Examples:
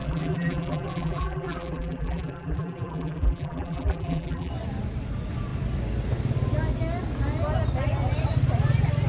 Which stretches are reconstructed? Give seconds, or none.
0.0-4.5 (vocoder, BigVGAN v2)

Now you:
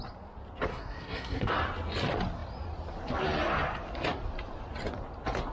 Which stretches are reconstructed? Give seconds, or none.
0.7-1.5 (codec, SNAC)

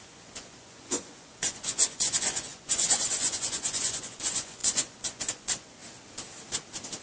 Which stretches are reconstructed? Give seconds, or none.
0.0-5.8 (vocoder, Vocos)

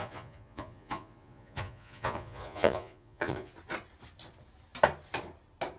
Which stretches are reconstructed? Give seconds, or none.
0.0-3.5 (vocoder, Vocos)

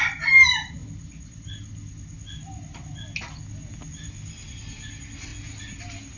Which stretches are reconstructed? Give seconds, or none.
none

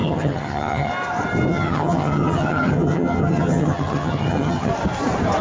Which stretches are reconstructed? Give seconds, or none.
0.0-0.9 (vocoder, HiFi-GAN); 1.5-4.7

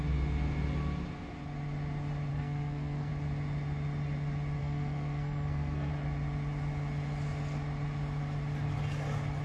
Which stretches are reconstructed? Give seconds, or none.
2.3-3.1 (codec, SNAC); 4.6-5.9